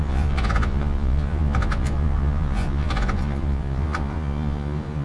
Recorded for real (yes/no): no